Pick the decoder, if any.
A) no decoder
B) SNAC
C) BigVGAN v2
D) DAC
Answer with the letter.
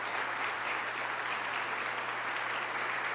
A